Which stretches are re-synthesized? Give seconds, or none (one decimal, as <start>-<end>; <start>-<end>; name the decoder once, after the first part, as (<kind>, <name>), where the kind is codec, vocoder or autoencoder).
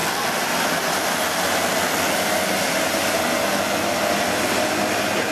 none